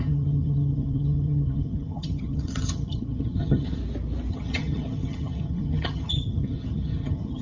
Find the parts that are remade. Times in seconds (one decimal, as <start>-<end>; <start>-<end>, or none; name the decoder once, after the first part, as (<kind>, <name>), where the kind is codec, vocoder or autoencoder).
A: 0.0-3.8 (vocoder, HiFi-GAN); 4.3-7.4